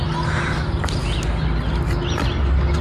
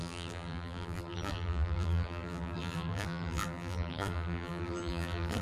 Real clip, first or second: first